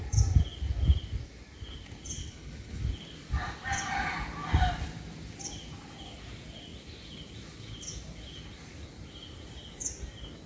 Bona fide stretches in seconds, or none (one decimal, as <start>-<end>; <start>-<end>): 0.0-2.2; 2.8-10.5